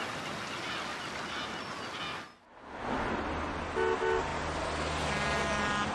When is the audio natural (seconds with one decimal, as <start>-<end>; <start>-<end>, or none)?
0.0-5.9